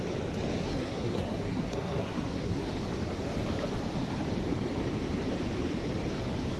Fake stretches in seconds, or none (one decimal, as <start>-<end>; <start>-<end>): 0.6-2.7